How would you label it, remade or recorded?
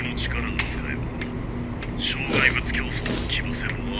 recorded